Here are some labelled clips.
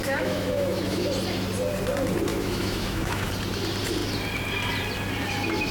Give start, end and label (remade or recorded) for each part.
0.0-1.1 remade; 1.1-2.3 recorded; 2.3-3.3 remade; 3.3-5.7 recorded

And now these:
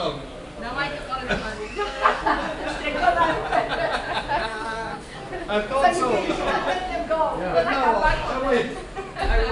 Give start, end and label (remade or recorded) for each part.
0.0-1.4 recorded; 1.4-2.2 remade; 2.2-4.4 recorded; 4.4-5.3 remade; 5.3-9.5 recorded

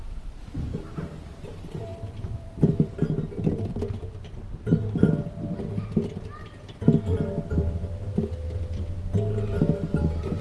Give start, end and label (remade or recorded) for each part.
0.0-1.9 recorded; 1.9-5.6 remade; 5.6-10.4 recorded

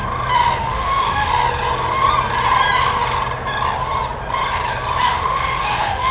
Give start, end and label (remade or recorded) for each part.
0.0-0.6 recorded; 0.6-1.3 remade; 1.3-5.0 recorded; 5.0-6.1 remade

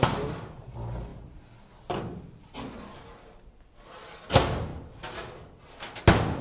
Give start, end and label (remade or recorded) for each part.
0.0-6.4 recorded

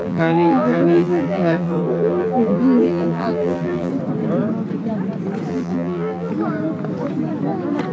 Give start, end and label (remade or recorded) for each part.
0.0-3.9 remade; 3.9-5.5 recorded; 5.5-6.3 remade; 6.3-7.9 recorded